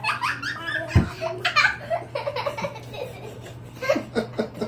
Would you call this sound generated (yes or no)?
no